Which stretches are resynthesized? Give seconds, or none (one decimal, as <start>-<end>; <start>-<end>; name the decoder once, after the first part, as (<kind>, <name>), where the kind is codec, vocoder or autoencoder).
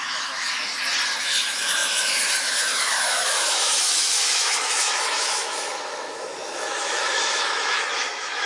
0.0-0.7 (autoencoder, DAC-VAE); 1.2-8.5